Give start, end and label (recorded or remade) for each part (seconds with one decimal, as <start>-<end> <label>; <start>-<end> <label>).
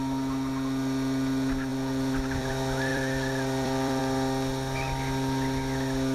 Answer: 0.0-1.7 recorded; 1.7-2.5 remade; 2.5-2.9 recorded; 2.9-4.0 remade; 4.0-6.1 recorded